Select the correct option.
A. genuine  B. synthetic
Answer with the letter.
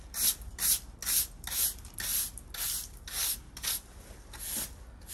A